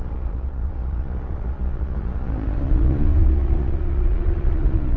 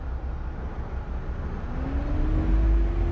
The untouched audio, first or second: second